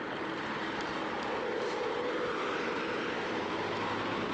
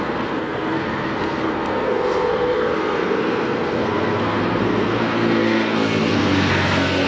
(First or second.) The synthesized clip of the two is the second